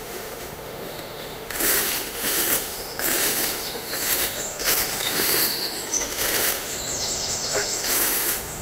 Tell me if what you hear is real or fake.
fake